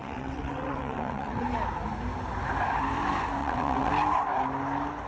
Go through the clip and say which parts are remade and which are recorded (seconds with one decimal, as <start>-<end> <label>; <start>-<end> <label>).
0.0-1.4 remade; 1.4-3.4 recorded; 3.4-3.9 remade; 3.9-5.1 recorded